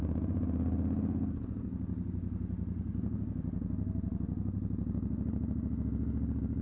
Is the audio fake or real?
real